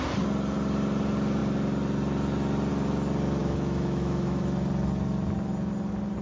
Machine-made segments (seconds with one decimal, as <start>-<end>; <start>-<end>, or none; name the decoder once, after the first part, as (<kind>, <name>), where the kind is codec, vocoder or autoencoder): 3.4-4.4 (autoencoder, DAC-VAE)